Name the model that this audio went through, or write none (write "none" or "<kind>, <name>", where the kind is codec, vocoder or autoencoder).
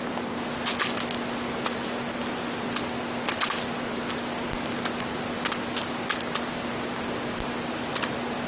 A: none